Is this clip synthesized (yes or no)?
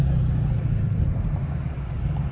no